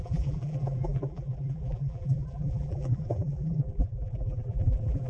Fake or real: fake